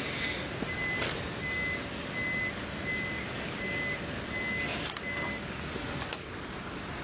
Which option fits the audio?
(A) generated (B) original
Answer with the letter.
B